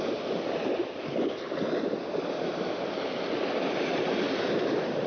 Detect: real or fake real